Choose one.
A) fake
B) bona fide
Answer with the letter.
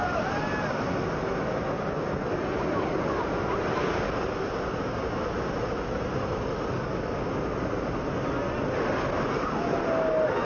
B